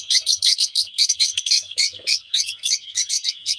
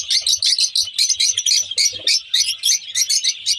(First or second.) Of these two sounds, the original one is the second